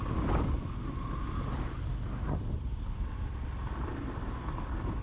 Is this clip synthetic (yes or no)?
no